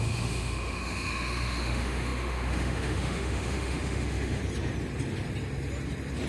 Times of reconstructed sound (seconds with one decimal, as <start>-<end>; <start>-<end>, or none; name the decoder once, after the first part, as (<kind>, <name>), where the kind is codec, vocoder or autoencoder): 0.0-4.4 (autoencoder, DAC-VAE)